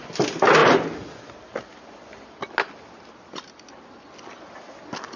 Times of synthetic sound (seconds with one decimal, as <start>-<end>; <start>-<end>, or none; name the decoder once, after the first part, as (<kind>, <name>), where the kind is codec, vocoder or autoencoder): none